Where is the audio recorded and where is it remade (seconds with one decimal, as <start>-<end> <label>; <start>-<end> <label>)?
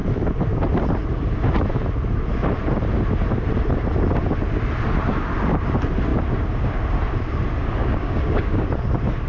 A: 0.0-7.8 recorded; 7.8-8.7 remade; 8.7-9.3 recorded